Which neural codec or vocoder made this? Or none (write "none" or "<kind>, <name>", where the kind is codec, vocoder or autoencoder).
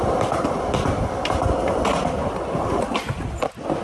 none